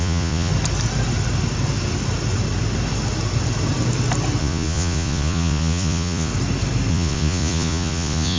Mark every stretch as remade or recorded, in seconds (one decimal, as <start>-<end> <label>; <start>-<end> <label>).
0.0-0.5 remade; 0.5-4.4 recorded; 4.4-6.3 remade; 6.3-6.9 recorded; 6.9-8.4 remade